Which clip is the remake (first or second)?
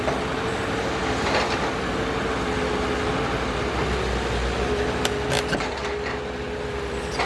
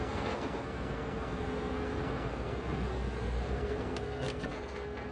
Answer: second